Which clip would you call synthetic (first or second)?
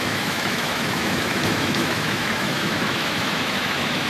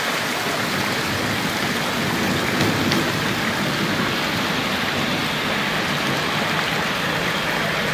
first